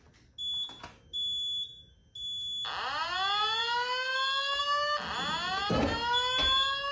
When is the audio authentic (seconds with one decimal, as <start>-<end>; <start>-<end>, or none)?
0.0-6.9